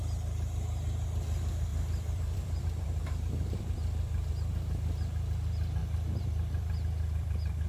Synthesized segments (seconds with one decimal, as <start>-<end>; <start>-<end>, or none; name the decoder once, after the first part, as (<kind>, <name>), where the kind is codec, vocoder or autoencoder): 1.7-4.3 (vocoder, BigVGAN v2); 5.8-7.7